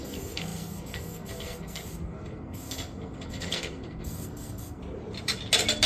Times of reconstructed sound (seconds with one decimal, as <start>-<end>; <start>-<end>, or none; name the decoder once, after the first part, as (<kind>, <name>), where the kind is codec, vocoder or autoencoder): 0.0-4.8 (codec, SNAC)